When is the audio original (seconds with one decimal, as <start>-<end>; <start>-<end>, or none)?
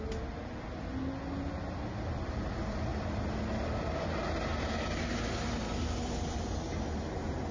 0.0-7.5